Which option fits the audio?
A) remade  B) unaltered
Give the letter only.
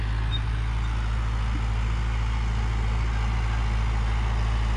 B